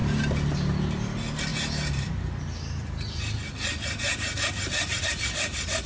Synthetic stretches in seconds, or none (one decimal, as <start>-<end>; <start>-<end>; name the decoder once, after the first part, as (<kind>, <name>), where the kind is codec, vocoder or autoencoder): none